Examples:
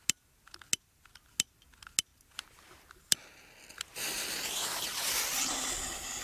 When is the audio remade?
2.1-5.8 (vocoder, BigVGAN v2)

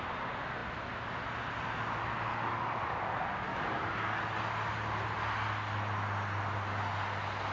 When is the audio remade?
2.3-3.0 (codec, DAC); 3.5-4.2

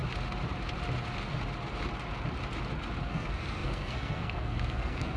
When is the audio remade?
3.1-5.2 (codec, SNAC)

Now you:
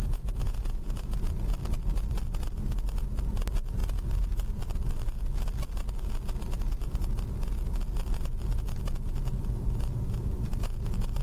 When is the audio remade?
0.0-1.2 (vocoder, Vocos)

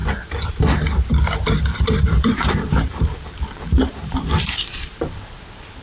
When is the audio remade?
1.6-5.8 (vocoder, BigVGAN v2)